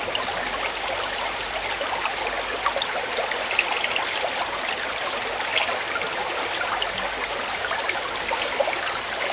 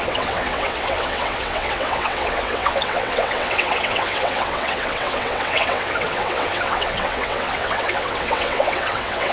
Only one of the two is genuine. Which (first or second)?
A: first